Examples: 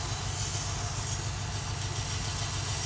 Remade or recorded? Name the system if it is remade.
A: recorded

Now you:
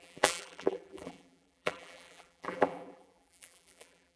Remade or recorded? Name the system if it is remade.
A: remade, vocoder, BigVGAN v2